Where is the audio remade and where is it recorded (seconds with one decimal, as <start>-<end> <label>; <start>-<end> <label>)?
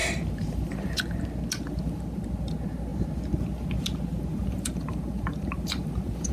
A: 0.0-1.2 remade; 1.2-4.3 recorded; 4.3-6.3 remade